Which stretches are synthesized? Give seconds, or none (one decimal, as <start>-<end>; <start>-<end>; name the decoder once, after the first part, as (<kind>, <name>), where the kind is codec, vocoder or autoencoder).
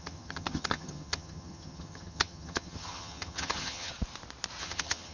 0.0-3.9 (vocoder, HiFi-GAN); 4.6-5.1